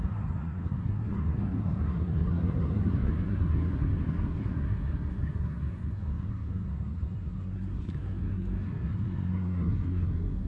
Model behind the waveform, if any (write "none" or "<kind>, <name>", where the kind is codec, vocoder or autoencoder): codec, SNAC